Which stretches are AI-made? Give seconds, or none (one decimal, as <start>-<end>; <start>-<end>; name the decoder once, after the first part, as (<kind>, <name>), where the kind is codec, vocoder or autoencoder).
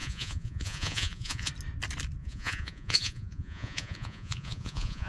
0.0-1.5 (vocoder, Vocos); 2.2-5.1